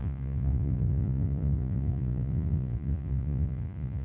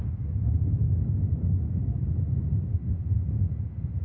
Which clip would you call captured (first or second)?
second